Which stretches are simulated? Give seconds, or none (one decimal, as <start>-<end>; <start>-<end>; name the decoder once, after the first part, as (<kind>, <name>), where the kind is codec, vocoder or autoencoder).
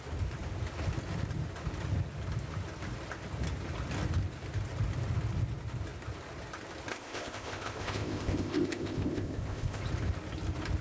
6.9-9.8 (codec, ZipCodec)